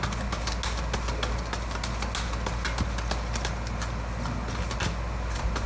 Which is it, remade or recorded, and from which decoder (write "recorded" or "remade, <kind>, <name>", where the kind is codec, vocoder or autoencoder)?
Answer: recorded